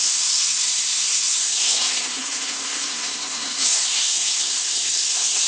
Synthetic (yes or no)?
yes